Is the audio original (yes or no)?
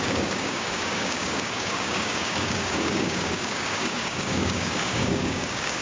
no